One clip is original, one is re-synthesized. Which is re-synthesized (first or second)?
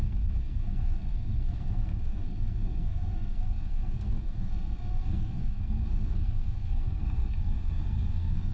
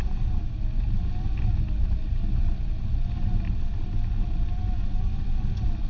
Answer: first